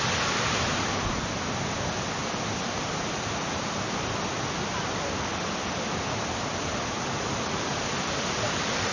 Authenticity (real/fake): real